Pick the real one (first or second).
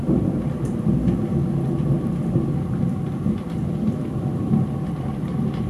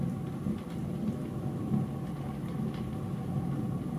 second